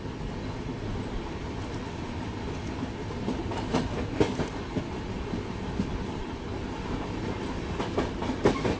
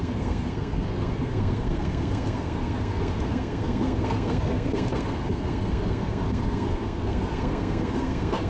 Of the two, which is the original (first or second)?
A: first